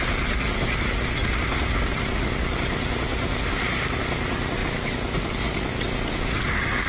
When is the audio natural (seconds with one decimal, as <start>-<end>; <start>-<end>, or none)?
0.0-6.9

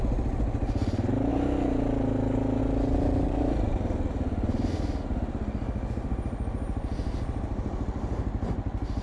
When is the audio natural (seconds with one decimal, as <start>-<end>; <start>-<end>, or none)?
0.0-9.0

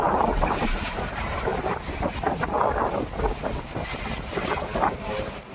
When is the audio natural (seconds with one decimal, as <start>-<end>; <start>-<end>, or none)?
1.5-4.8

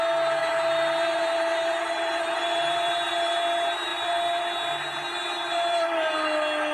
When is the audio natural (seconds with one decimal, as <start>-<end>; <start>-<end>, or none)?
0.0-0.4; 3.1-3.9; 4.4-6.7

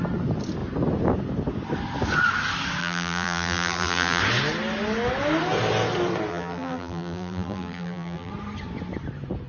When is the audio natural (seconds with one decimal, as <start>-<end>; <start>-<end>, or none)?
0.0-2.8; 4.2-6.3; 8.3-9.5